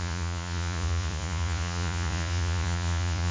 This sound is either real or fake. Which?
fake